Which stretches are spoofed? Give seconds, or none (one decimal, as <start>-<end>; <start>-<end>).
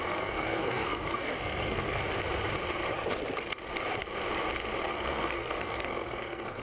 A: 0.0-2.0; 4.9-6.6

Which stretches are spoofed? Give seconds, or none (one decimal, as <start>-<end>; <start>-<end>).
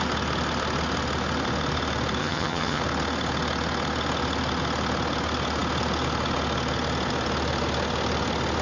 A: 2.2-2.8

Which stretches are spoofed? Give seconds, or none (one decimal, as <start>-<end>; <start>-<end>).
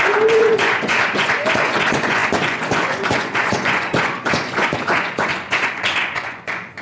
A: 0.0-6.8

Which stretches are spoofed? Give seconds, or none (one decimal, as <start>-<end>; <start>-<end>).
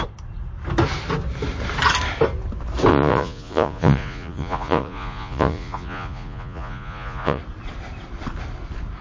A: 2.9-7.4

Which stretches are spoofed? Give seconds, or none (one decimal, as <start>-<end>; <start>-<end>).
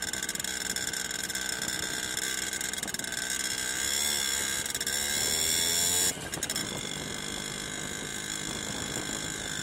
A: 0.0-1.3; 6.6-7.1; 8.1-9.6